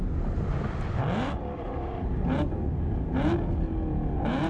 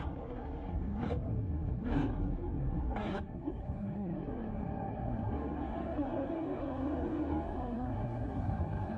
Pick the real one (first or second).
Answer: first